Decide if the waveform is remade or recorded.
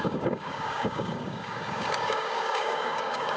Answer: remade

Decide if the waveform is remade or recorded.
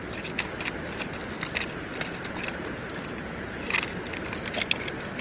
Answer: recorded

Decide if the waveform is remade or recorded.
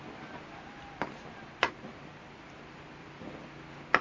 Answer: recorded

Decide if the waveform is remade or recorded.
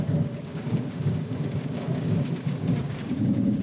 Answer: remade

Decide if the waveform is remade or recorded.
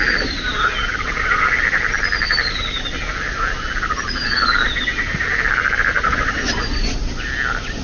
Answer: recorded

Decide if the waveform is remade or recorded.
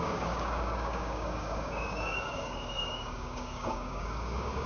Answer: remade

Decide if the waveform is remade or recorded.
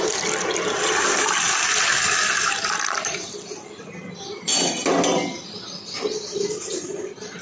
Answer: recorded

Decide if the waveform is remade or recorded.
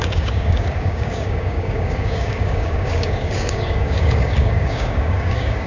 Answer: remade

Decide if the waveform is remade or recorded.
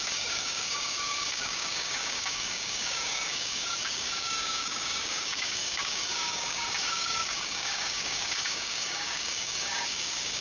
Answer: remade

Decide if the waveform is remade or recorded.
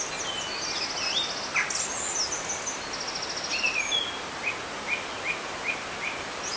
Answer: recorded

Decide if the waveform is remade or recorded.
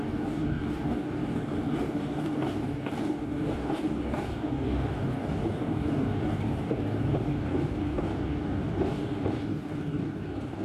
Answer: remade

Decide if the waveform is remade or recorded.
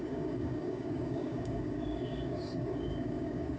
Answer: remade